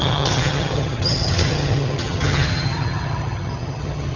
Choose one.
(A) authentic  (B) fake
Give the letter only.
B